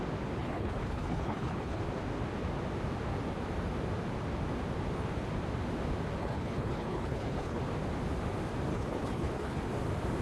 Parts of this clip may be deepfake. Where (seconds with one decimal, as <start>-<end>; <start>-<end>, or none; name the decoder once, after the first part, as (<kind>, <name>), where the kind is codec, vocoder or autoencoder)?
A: 0.4-1.8 (codec, HILCodec); 6.2-7.6; 8.7-9.6

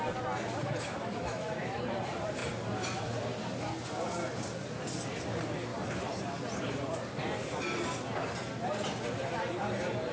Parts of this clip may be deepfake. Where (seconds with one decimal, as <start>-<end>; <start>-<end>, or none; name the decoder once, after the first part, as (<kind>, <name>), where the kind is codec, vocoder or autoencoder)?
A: 0.6-1.8 (autoencoder, DAC-VAE)

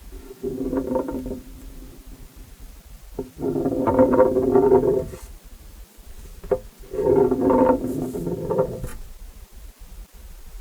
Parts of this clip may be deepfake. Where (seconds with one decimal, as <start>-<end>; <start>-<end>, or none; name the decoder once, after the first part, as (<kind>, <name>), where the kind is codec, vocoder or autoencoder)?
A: 8.9-9.6 (vocoder, Vocos)

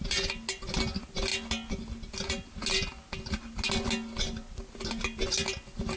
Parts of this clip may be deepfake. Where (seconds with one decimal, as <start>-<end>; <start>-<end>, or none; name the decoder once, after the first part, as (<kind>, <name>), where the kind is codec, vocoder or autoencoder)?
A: none

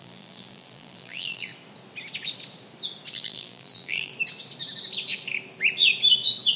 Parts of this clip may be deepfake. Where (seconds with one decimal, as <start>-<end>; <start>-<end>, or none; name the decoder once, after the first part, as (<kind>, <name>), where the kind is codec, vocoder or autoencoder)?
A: 0.0-1.5 (vocoder, BigVGAN v2); 3.1-4.1

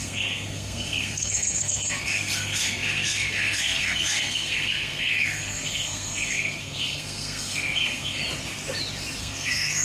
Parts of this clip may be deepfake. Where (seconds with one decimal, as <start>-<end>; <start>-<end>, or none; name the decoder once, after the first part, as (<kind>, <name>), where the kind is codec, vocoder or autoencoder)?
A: 0.0-8.2 (codec, SNAC); 9.2-9.8

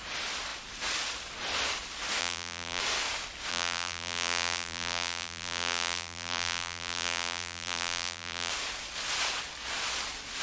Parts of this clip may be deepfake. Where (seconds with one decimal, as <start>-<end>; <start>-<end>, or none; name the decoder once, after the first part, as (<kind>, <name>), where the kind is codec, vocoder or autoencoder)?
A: 2.2-2.8 (vocoder, BigVGAN v2); 3.5-8.5